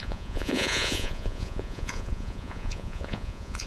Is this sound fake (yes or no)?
yes